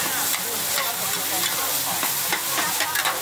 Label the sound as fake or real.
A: real